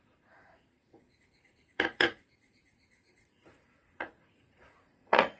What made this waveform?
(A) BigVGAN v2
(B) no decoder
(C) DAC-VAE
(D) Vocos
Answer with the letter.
D